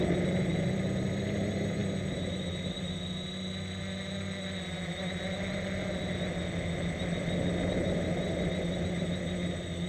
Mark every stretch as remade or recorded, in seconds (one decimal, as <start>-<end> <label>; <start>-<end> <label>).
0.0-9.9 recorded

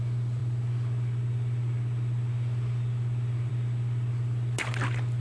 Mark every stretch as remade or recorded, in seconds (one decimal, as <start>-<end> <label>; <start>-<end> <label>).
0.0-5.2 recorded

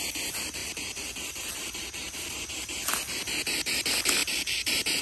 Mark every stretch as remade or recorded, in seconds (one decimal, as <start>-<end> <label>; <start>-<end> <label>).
0.0-0.6 recorded; 0.6-2.3 remade; 2.3-4.2 recorded; 4.2-5.0 remade

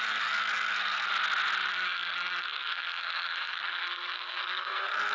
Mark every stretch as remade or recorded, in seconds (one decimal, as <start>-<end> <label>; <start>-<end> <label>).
0.0-1.1 remade; 1.1-1.7 recorded; 1.7-5.1 remade

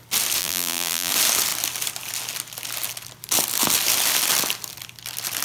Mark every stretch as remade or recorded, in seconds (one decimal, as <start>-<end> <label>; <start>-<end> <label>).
0.0-0.4 recorded; 0.4-1.1 remade; 1.1-5.4 recorded